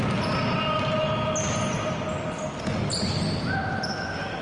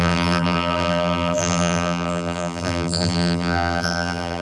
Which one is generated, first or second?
second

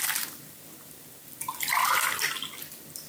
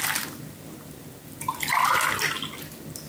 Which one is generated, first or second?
first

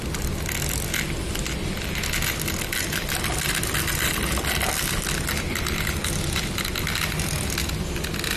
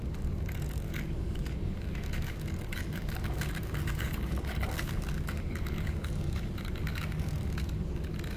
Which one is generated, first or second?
second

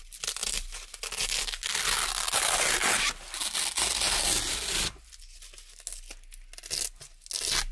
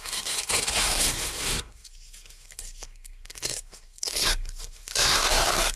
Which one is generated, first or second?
second